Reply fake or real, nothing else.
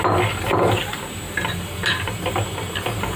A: real